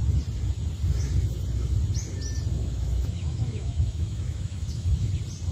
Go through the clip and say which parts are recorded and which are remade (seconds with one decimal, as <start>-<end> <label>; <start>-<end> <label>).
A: 0.0-2.6 recorded; 2.6-5.1 remade; 5.1-5.5 recorded